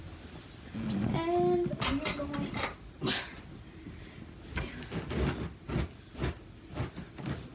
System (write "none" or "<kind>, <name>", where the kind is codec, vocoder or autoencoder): none